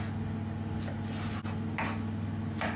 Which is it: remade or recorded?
recorded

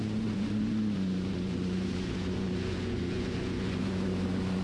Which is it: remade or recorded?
remade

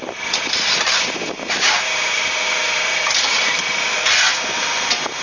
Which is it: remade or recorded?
recorded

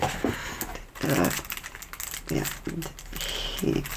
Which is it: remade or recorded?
recorded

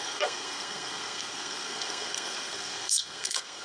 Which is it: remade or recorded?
remade